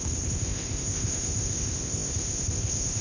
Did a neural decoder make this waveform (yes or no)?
yes